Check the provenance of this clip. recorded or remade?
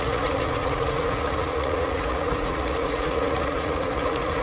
remade